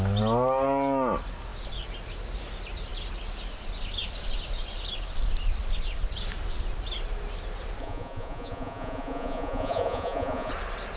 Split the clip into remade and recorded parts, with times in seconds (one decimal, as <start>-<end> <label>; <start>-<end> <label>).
0.0-7.8 recorded; 7.8-10.5 remade; 10.5-11.0 recorded